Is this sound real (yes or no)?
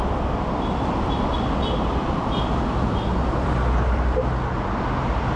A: yes